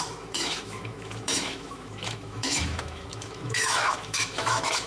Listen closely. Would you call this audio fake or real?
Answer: fake